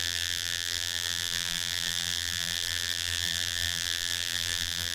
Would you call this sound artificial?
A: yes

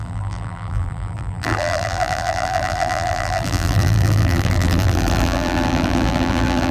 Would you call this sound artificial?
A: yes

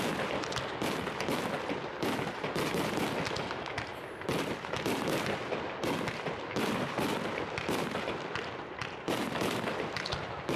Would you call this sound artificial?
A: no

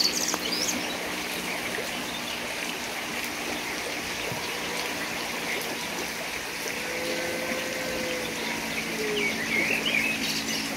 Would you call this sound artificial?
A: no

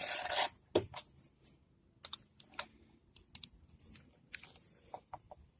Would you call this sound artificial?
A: no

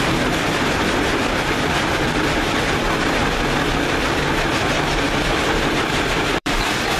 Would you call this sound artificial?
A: yes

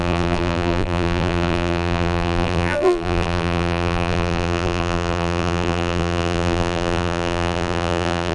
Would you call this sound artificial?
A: yes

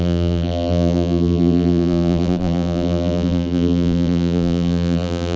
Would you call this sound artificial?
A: yes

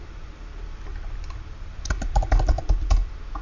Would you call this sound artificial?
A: yes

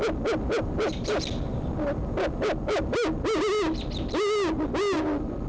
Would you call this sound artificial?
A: no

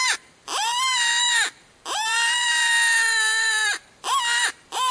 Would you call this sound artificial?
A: yes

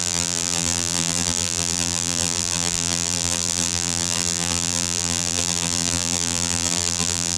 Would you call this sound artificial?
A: yes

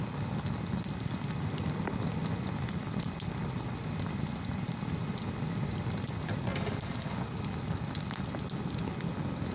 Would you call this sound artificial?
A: no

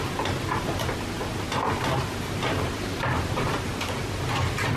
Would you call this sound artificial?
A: no